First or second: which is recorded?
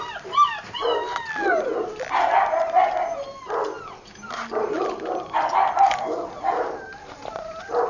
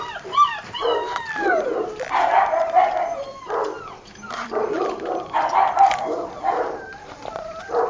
first